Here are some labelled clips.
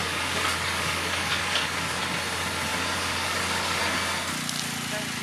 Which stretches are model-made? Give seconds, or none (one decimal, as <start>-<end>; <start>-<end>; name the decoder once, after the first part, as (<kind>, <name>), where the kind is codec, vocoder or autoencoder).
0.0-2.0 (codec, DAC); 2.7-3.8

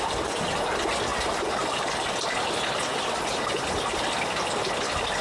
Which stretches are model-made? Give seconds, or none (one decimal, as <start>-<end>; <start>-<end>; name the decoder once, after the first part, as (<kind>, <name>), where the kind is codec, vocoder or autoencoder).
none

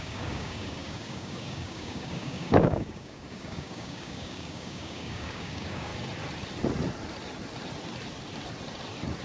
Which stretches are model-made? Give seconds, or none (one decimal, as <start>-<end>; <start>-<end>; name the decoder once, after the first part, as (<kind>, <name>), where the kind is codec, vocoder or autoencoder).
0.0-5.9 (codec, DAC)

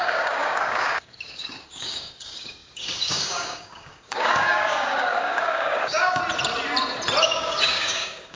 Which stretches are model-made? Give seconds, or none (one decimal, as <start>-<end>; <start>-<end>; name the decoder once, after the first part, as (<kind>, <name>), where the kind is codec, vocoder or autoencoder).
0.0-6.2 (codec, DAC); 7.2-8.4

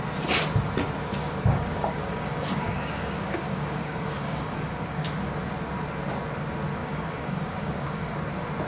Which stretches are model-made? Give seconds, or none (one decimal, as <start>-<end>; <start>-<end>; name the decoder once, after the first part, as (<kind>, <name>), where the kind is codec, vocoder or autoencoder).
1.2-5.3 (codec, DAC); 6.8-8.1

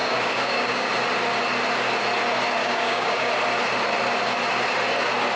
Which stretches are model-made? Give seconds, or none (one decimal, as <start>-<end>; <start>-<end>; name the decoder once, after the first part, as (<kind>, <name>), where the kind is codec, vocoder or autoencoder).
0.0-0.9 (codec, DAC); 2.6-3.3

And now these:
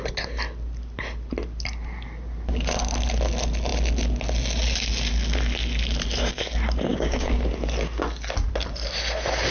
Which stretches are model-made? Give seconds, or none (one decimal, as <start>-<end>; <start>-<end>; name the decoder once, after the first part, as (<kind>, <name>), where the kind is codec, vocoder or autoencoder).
6.9-7.4 (codec, DAC)

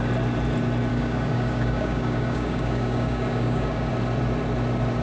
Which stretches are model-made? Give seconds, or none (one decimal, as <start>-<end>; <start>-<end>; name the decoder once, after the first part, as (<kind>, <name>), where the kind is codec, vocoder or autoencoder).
0.9-3.9 (codec, DAC)